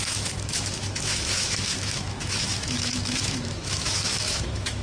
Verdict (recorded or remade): remade